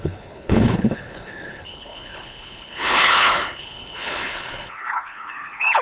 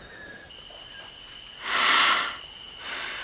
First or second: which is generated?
first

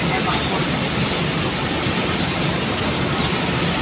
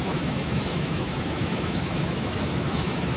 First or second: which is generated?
second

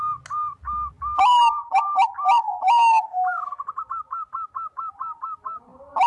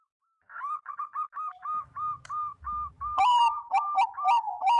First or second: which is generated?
second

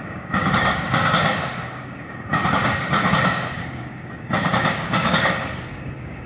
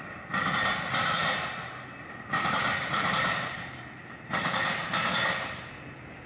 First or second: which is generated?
first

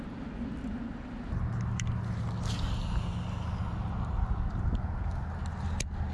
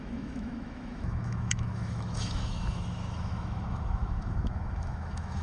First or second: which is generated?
second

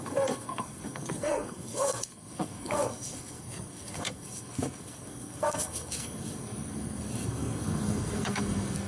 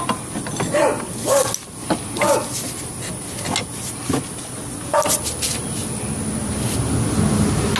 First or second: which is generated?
first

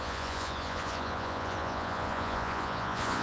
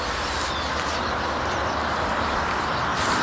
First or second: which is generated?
first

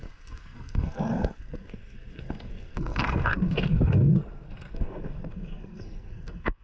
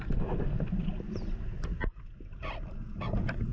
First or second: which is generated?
first